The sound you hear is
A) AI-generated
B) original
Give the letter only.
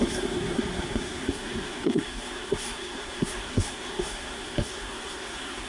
A